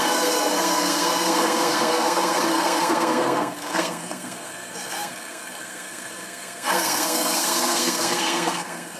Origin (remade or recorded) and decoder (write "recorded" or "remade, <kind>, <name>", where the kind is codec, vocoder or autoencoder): remade, codec, SNAC